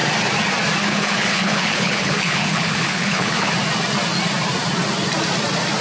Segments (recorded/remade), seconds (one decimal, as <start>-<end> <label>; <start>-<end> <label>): 0.0-0.9 recorded; 0.9-3.5 remade; 3.5-5.8 recorded